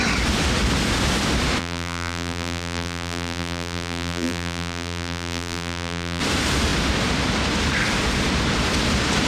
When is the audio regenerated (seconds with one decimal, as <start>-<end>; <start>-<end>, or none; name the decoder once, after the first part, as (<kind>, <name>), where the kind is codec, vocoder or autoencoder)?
1.6-6.2 (vocoder, BigVGAN v2)